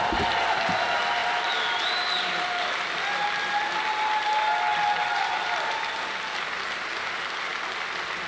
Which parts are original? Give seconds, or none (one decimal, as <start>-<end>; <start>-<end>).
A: 0.0-1.2; 4.2-4.7; 6.5-7.5